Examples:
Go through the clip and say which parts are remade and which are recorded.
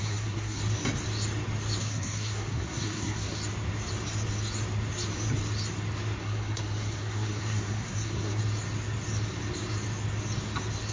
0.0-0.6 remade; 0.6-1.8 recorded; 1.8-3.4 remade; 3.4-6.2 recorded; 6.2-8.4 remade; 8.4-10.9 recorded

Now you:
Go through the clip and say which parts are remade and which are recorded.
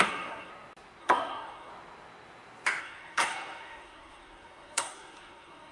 0.0-0.5 remade; 0.5-1.0 recorded; 1.0-1.7 remade; 1.7-2.8 recorded; 2.8-5.7 remade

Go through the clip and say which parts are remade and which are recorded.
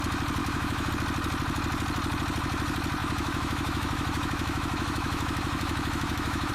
0.0-0.4 recorded; 0.4-0.9 remade; 0.9-3.0 recorded; 3.0-6.5 remade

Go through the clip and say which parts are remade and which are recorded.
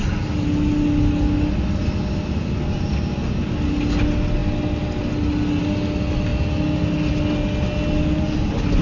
0.0-8.8 recorded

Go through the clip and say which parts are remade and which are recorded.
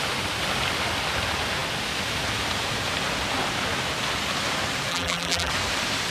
0.0-4.9 recorded; 4.9-5.5 remade; 5.5-6.1 recorded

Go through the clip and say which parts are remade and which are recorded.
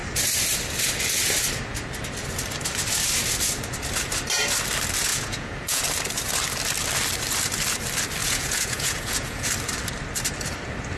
0.0-5.1 recorded; 5.1-5.8 remade; 5.8-8.2 recorded; 8.2-9.5 remade; 9.5-11.0 recorded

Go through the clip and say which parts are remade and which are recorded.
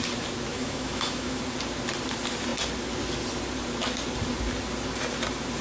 0.0-0.5 recorded; 0.5-1.4 remade; 1.4-5.6 recorded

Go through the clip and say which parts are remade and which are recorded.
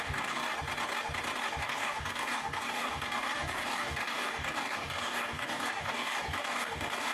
0.0-0.4 remade; 0.4-1.6 recorded; 1.6-7.1 remade